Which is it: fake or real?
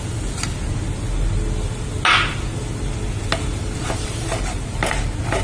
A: real